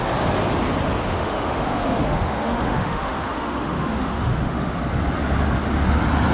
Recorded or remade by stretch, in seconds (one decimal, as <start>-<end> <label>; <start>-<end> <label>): 0.0-1.0 recorded; 1.0-4.8 remade; 4.8-6.3 recorded